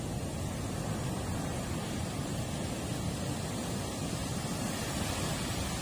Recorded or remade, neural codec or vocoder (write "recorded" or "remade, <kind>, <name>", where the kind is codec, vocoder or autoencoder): recorded